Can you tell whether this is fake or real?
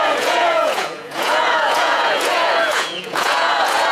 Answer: fake